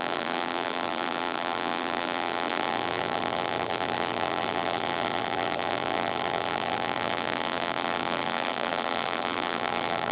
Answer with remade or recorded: remade